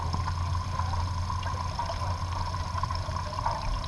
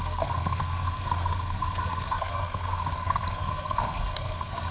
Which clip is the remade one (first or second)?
second